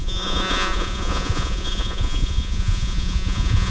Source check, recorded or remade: remade